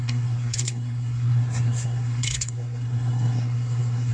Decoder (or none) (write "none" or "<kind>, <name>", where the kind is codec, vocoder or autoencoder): codec, SNAC